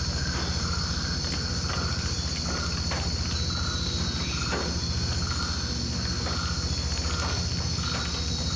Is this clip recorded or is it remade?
recorded